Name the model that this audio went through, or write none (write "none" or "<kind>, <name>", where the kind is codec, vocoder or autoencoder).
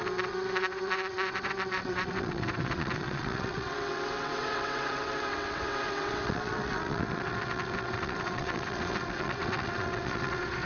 vocoder, WaveNeXt